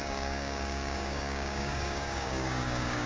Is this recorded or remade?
remade